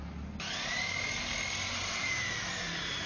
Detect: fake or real real